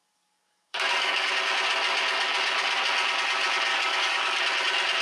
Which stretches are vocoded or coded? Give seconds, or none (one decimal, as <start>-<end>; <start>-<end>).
0.0-1.3; 3.7-4.4